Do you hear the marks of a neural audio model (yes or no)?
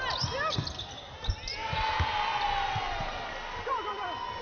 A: no